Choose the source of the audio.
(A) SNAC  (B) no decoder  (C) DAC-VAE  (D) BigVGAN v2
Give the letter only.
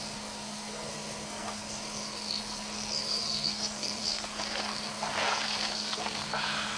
A